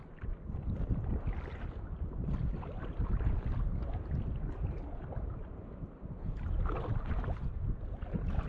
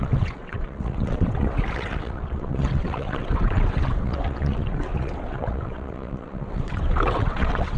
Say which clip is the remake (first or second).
second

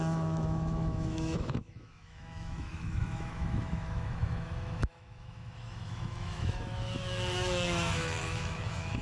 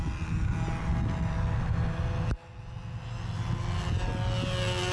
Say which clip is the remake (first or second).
first